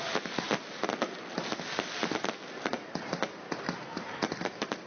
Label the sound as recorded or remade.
recorded